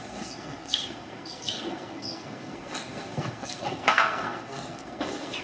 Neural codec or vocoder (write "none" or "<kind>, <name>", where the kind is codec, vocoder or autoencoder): codec, SNAC